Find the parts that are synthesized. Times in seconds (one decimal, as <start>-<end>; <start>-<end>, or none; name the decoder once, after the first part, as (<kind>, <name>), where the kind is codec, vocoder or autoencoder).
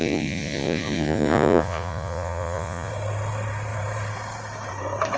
0.0-2.9 (vocoder, Vocos)